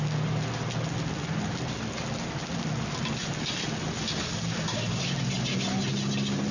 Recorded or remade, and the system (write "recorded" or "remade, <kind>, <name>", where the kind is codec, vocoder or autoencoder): recorded